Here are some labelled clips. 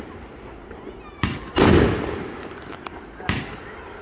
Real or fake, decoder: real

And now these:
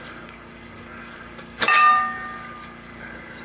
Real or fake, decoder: fake, codec, DAC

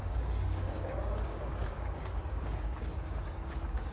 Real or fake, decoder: fake, codec, DAC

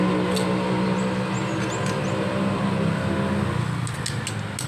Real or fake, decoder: real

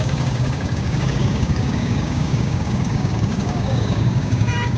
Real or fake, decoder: fake, codec, DAC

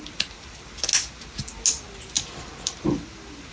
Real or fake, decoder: real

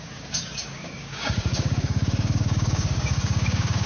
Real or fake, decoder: fake, codec, DAC